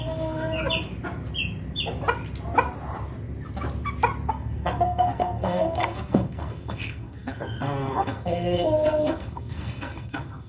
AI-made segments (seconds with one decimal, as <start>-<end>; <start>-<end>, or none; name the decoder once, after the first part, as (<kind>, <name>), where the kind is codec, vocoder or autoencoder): 0.0-0.6 (codec, SNAC); 4.3-10.5